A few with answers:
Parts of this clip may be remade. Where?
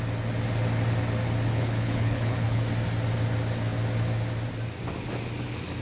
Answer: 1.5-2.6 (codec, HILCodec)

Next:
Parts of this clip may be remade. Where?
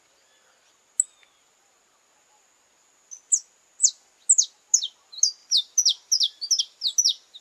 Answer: none